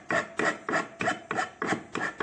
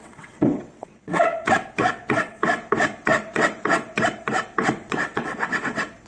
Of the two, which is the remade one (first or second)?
second